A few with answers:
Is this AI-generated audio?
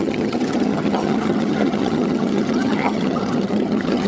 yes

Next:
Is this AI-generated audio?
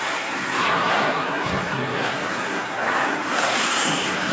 yes